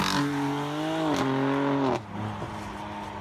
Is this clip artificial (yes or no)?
no